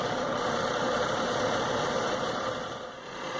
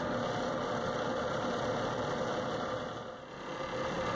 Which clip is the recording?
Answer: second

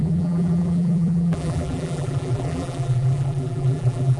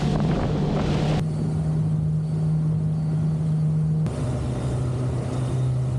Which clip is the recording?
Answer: second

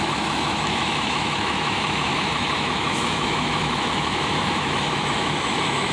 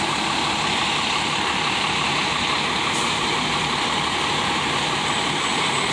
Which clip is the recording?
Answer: second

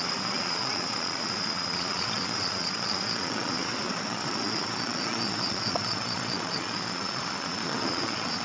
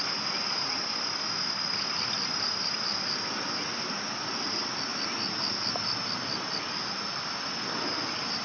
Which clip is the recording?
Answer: second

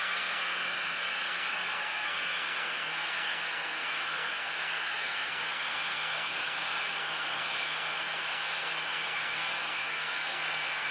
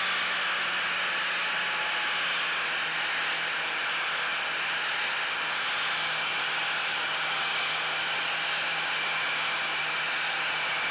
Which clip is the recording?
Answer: second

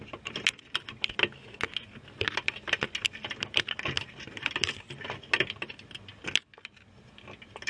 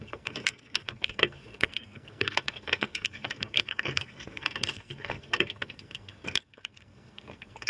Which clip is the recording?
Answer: first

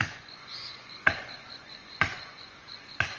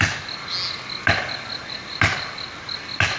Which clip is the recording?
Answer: second